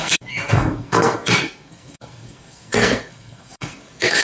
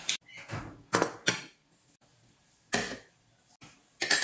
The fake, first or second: first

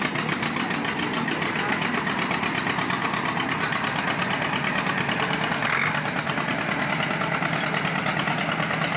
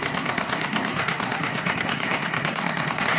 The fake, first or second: second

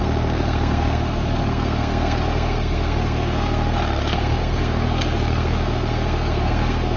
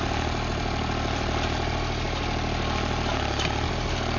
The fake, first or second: first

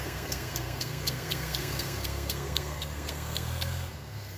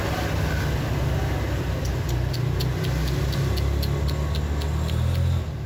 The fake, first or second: first